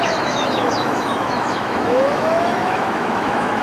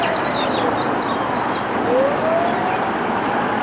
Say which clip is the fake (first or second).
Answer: first